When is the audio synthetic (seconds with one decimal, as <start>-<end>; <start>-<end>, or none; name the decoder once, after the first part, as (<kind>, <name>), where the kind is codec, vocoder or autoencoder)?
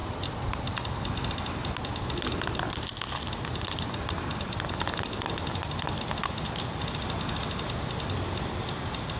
none